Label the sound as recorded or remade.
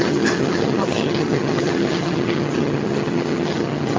remade